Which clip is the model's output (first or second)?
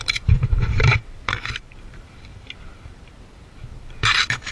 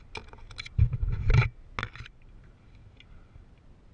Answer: first